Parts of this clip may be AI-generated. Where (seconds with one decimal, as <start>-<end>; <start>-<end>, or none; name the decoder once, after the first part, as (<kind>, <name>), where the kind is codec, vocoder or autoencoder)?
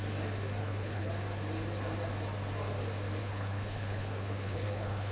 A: 0.6-1.1 (codec, HILCodec); 3.2-5.1